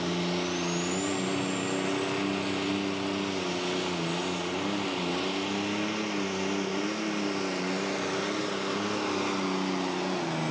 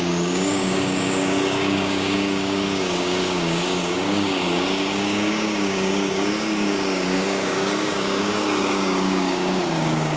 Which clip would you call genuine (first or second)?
first